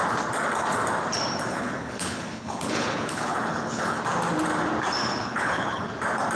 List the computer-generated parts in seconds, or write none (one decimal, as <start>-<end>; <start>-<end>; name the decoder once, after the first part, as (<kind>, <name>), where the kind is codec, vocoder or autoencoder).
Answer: 1.5-4.0 (codec, HILCodec); 5.0-5.9